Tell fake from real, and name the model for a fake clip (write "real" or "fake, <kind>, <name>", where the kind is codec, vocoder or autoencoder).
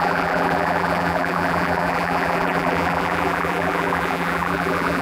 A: fake, vocoder, BigVGAN v2